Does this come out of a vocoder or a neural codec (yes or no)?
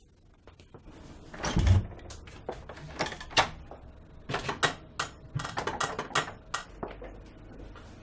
no